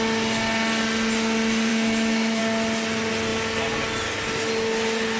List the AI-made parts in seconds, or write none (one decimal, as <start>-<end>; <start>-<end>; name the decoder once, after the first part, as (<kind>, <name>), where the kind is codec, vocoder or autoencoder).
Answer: 1.7-2.4 (autoencoder, DAC-VAE)